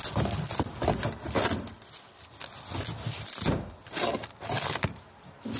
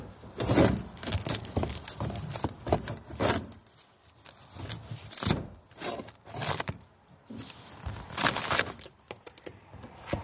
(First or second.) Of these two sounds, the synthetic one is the second